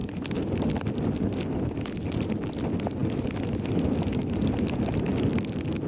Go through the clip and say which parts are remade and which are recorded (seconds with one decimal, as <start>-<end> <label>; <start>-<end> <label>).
0.0-1.8 recorded; 1.8-3.0 remade; 3.0-4.2 recorded; 4.2-5.9 remade